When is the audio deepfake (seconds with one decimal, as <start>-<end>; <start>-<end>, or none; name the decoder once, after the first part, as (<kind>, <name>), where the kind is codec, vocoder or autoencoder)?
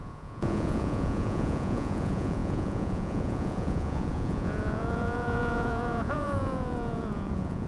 0.0-7.7 (vocoder, Vocos)